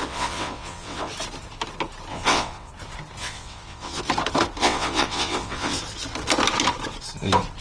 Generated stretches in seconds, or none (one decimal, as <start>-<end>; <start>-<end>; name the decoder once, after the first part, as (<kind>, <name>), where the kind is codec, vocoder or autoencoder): 0.0-1.1 (vocoder, WaveNeXt); 2.1-2.7; 3.2-4.0; 4.6-5.8

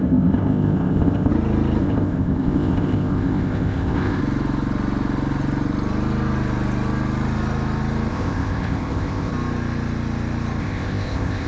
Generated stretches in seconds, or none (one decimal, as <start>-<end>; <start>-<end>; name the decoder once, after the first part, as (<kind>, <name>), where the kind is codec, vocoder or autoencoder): 0.0-1.3 (codec, ZipCodec); 1.8-4.2; 8.1-9.3; 10.6-11.5